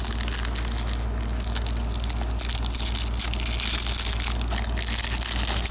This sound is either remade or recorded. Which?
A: recorded